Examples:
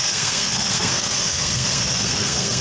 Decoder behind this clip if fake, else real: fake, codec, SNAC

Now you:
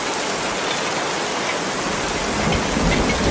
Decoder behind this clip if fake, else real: real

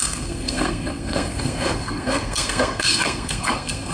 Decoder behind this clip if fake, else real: fake, codec, SNAC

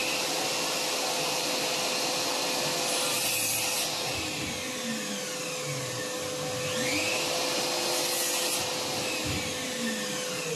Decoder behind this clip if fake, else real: real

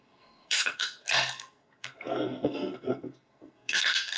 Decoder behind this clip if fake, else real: fake, codec, SNAC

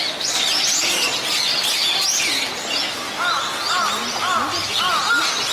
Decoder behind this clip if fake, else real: real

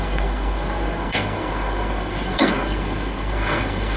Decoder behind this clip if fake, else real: fake, codec, SNAC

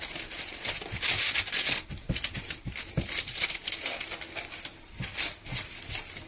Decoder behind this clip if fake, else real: real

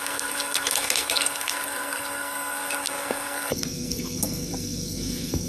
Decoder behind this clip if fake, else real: fake, codec, SNAC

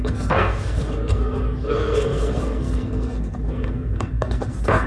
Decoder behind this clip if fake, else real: fake, codec, SNAC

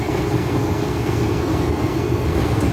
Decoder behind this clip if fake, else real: fake, codec, SNAC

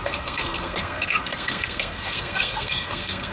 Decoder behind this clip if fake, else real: fake, codec, SNAC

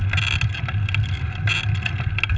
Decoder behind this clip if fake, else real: real